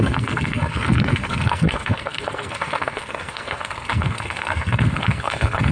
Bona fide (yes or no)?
no